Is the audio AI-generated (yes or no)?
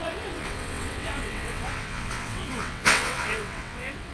yes